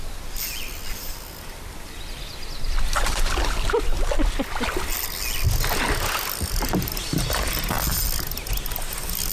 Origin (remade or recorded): recorded